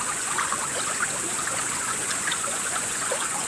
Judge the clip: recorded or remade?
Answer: remade